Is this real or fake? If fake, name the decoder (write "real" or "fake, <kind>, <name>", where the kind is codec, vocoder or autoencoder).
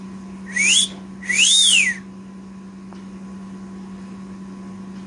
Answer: real